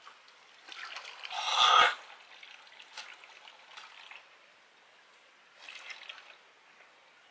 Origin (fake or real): real